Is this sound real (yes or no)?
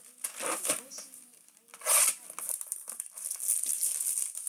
yes